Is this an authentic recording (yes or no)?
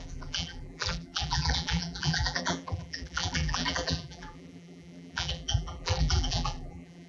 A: no